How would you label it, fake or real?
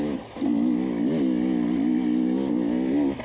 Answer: real